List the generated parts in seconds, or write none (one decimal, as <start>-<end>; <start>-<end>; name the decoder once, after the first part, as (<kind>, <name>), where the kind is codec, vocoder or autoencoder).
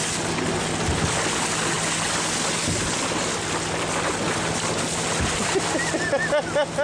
none